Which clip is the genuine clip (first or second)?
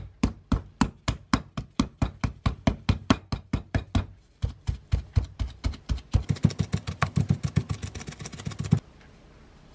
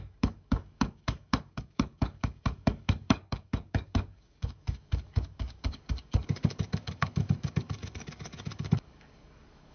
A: first